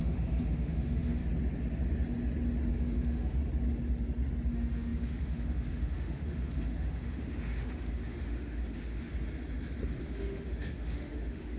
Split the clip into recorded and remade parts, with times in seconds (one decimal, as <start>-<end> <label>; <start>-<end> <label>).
0.0-1.2 remade; 1.2-2.7 recorded; 2.7-3.4 remade; 3.4-4.5 recorded; 4.5-9.1 remade; 9.1-10.0 recorded; 10.0-11.6 remade